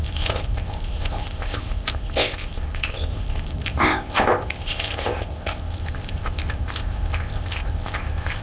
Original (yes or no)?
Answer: no